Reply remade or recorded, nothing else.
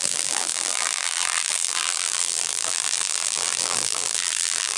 remade